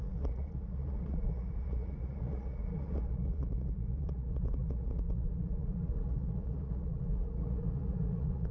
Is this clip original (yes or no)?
no